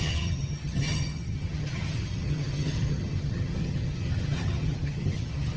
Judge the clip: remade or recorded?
remade